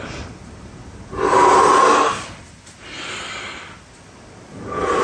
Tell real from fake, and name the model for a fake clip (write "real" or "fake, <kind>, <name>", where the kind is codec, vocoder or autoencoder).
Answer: real